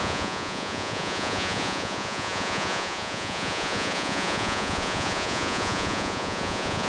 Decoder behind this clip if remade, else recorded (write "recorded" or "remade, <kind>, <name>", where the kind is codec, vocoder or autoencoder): remade, vocoder, Vocos